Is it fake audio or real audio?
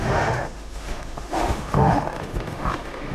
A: fake